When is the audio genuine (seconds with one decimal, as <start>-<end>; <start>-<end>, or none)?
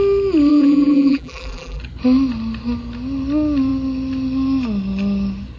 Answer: 0.0-0.5; 1.8-5.6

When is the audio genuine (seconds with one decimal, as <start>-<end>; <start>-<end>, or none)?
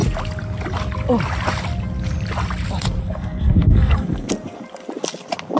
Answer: 0.0-3.0; 4.3-5.6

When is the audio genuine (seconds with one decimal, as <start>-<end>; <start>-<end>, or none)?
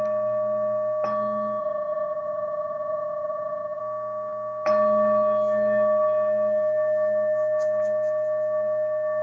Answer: 0.0-1.6; 3.8-9.2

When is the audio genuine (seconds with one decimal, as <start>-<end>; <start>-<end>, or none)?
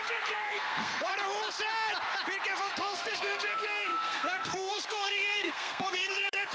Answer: 1.1-2.6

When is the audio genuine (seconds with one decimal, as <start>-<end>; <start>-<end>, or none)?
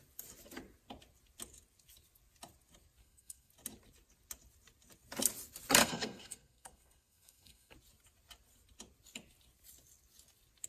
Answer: 0.0-3.0; 3.5-5.8; 7.7-10.7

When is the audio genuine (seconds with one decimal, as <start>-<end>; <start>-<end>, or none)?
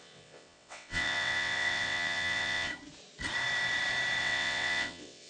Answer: 2.7-4.2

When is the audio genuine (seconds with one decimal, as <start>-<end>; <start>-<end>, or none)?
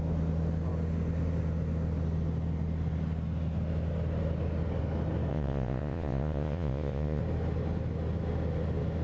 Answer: 0.0-5.3; 7.2-9.0